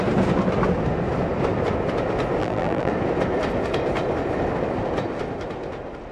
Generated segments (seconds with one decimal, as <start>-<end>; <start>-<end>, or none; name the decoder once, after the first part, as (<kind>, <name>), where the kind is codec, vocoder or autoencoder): 2.4-2.9 (vocoder, BigVGAN v2)

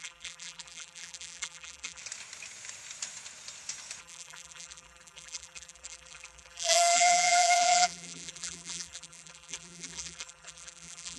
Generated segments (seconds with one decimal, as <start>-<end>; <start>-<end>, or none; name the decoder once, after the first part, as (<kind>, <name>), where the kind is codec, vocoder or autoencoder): 0.0-2.0 (vocoder, BigVGAN v2); 4.0-11.2

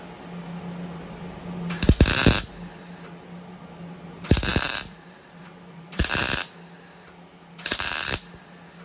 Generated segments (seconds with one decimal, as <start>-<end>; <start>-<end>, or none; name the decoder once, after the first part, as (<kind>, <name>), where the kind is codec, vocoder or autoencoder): 4.5-6.0 (vocoder, BigVGAN v2)

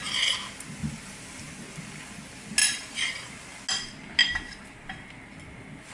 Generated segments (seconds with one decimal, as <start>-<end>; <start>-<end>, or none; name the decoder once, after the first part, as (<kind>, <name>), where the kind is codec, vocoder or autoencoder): 0.8-1.5 (vocoder, BigVGAN v2); 2.6-3.3; 4.2-4.9

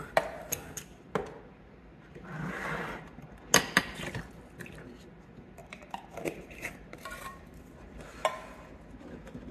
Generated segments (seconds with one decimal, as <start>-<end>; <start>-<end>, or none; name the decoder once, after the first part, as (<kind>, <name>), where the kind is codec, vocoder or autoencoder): 5.6-7.6 (vocoder, BigVGAN v2)